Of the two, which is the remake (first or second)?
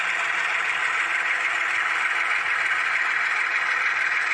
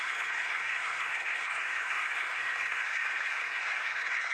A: second